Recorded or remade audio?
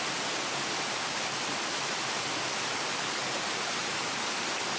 recorded